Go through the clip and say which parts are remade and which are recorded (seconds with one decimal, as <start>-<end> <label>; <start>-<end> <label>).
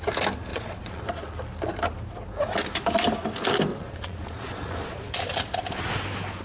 0.0-0.5 recorded; 0.5-1.0 remade; 1.0-3.7 recorded; 3.7-5.2 remade; 5.2-6.4 recorded